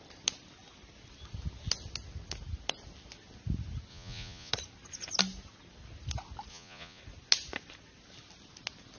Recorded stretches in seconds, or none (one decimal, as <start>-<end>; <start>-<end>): 0.0-3.9; 4.5-6.5; 7.0-9.0